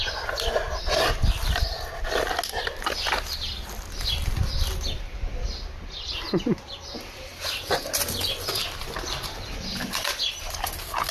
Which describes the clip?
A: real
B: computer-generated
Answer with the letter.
A